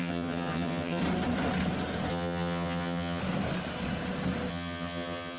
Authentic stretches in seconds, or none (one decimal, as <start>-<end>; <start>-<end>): 1.0-2.1; 3.2-4.5